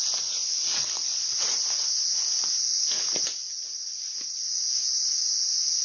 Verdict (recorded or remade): recorded